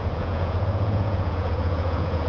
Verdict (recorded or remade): remade